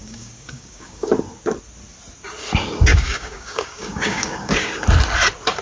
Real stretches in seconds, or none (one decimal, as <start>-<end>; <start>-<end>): 1.1-2.9; 4.7-5.6